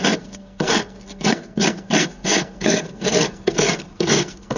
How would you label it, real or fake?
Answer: fake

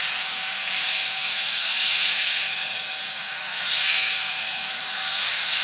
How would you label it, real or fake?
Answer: fake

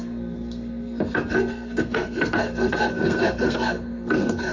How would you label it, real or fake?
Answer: fake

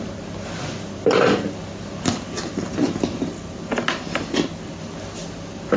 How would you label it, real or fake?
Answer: real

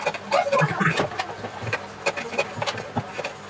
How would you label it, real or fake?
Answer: real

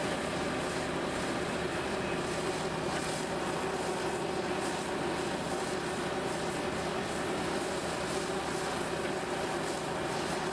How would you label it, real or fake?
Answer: real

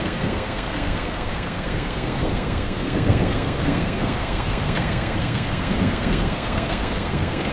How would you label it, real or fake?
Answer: fake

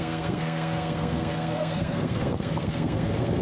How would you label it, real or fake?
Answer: fake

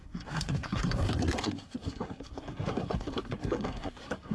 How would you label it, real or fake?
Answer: fake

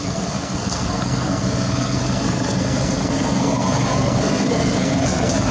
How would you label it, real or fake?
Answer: fake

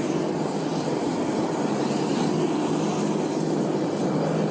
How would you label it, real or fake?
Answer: real